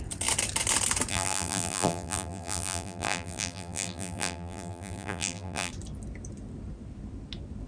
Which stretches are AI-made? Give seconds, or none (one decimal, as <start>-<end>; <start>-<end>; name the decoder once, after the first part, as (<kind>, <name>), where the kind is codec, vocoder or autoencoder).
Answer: 1.1-5.7 (vocoder, BigVGAN v2)